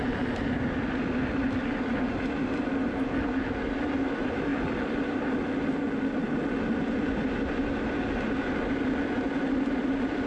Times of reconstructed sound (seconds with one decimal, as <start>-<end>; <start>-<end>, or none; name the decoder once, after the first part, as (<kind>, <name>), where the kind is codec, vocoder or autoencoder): none